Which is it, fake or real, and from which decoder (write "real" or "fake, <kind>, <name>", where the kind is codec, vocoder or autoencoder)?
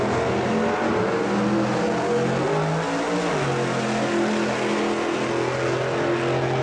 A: real